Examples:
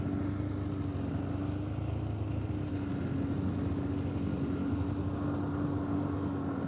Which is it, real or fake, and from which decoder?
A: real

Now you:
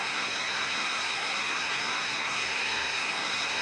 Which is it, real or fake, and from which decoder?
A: fake, codec, SNAC